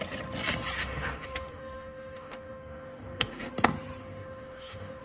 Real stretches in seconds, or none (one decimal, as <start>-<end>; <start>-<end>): 0.0-0.8; 3.5-4.0